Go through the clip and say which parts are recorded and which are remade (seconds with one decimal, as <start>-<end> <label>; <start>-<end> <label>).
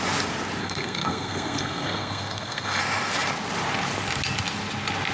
0.0-0.6 recorded; 0.6-2.8 remade; 2.8-5.1 recorded